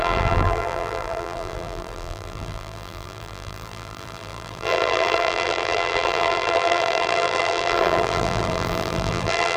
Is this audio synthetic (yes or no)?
yes